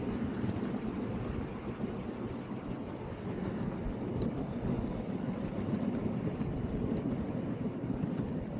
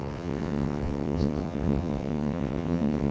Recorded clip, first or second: first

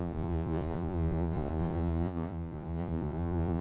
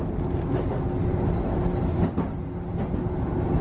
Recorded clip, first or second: second